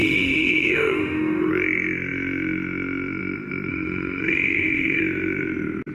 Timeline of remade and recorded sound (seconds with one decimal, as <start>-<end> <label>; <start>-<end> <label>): 0.0-1.5 remade; 1.5-3.7 recorded; 3.7-5.0 remade; 5.0-5.9 recorded